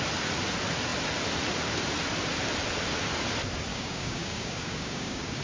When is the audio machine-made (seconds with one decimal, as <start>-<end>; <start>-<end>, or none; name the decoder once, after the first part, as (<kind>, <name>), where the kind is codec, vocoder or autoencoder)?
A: 3.7-5.4 (codec, DAC)

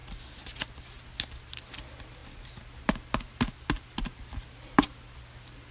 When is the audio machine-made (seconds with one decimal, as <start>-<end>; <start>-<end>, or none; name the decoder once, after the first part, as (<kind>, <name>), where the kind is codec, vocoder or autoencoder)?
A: none